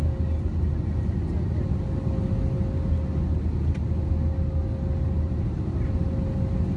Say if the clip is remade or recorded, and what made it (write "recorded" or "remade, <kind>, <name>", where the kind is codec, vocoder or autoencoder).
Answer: recorded